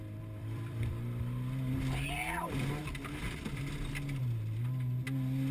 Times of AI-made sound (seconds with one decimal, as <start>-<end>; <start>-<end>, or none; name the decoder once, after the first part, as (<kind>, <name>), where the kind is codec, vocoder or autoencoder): 0.4-0.9 (vocoder, BigVGAN v2)

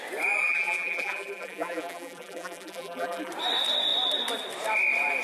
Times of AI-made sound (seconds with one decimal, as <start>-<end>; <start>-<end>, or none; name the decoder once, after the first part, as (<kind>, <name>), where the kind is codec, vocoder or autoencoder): 0.4-3.3 (vocoder, BigVGAN v2)